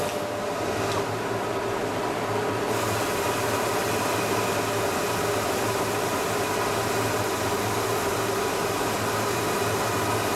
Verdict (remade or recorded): recorded